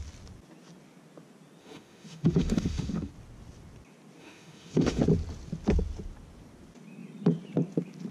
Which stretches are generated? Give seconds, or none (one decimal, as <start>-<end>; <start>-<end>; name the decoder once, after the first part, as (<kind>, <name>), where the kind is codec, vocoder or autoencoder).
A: 1.6-3.1 (autoencoder, DAC-VAE); 4.2-5.0